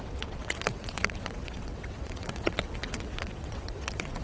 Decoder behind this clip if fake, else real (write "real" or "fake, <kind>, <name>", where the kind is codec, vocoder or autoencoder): fake, vocoder, WaveNeXt